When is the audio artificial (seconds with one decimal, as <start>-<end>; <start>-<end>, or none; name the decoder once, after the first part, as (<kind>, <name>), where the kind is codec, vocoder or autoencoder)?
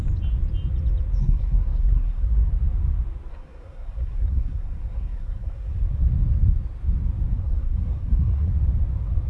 1.2-2.5 (codec, SNAC); 3.3-5.8; 7.3-8.5